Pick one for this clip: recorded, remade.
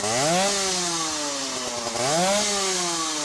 recorded